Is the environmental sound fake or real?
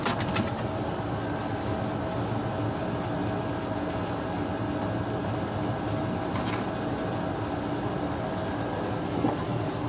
real